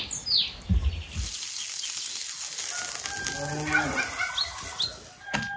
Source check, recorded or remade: recorded